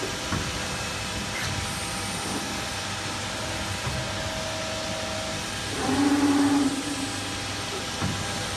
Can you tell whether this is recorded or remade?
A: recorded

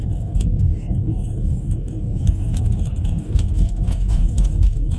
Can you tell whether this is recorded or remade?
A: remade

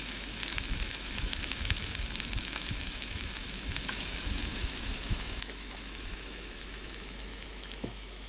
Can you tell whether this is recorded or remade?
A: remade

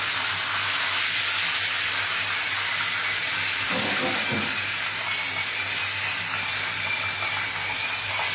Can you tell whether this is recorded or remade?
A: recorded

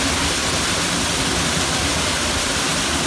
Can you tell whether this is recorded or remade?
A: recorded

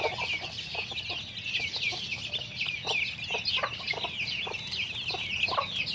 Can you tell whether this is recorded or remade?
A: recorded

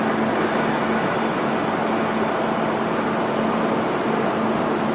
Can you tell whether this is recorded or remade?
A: recorded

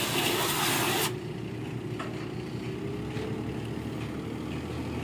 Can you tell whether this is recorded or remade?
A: recorded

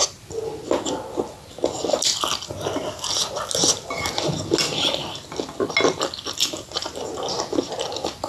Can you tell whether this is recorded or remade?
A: recorded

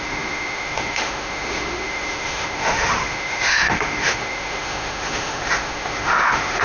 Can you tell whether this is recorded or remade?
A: remade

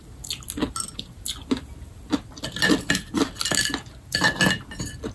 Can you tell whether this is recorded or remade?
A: recorded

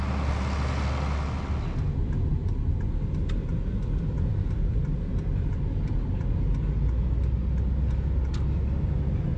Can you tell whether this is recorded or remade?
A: recorded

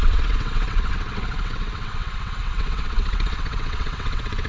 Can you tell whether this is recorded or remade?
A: remade